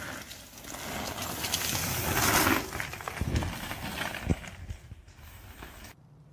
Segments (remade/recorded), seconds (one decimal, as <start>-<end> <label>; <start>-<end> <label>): 0.0-6.3 recorded

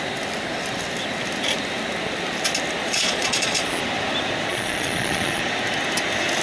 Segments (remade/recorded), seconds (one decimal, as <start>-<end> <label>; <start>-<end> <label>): 0.0-2.8 recorded; 2.8-3.8 remade; 3.8-4.5 recorded; 4.5-5.4 remade; 5.4-6.4 recorded

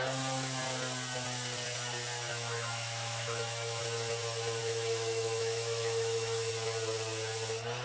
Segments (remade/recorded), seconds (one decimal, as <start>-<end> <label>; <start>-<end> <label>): 0.0-2.3 recorded; 2.3-3.8 remade; 3.8-4.6 recorded; 4.6-6.5 remade; 6.5-7.8 recorded

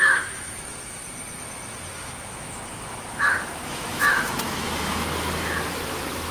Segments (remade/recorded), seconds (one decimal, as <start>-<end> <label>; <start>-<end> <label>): 0.0-1.0 remade; 1.0-1.9 recorded; 1.9-6.3 remade

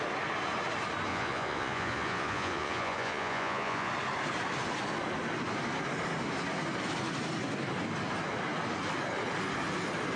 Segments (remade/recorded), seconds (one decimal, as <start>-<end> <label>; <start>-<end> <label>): 0.0-1.1 recorded; 1.1-3.9 remade; 3.9-10.2 recorded